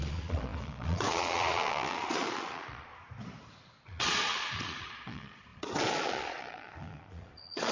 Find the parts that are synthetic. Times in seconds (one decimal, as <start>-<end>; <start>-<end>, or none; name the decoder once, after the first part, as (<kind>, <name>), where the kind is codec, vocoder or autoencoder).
0.0-2.9 (vocoder, Vocos); 3.8-7.7